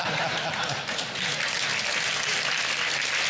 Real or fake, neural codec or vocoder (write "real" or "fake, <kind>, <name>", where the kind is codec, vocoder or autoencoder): real